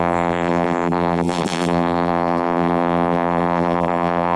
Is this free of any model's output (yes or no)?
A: no